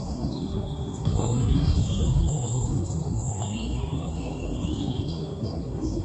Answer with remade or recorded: remade